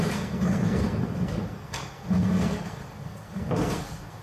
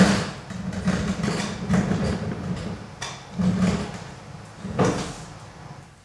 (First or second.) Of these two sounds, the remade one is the first